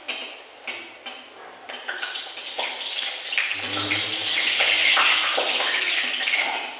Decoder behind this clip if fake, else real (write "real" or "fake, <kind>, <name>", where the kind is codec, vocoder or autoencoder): real